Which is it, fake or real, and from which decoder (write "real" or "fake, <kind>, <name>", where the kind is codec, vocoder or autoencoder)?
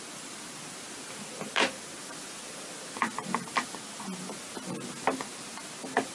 real